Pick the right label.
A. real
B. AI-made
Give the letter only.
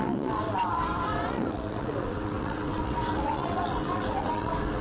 B